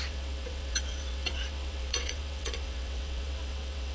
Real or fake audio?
fake